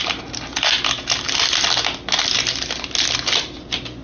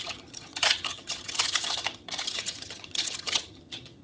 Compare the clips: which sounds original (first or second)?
first